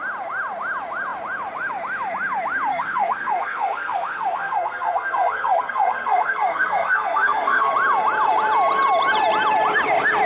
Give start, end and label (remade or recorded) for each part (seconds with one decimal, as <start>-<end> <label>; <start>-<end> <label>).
0.0-2.7 recorded; 2.7-7.7 remade; 7.7-10.3 recorded